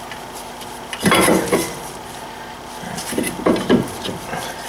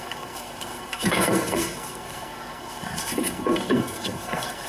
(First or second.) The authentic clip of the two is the first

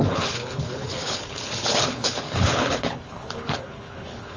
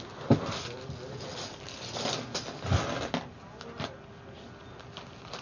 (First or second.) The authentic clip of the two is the second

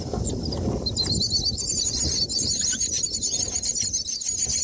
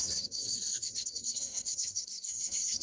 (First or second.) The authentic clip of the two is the first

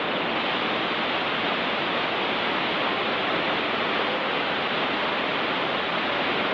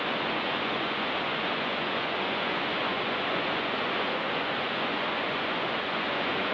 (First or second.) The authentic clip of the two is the first